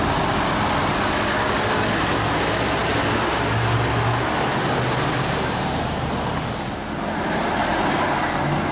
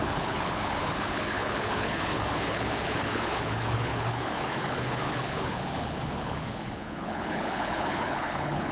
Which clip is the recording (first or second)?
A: first